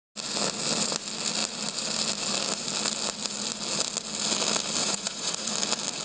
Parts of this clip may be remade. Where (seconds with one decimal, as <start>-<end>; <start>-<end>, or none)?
4.8-5.5